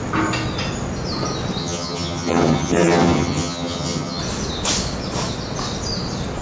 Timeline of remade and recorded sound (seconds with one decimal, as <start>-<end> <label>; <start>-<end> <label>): 0.0-1.6 recorded; 1.6-4.2 remade; 4.2-6.4 recorded